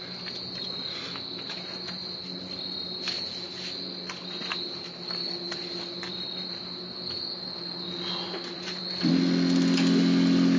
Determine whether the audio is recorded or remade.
recorded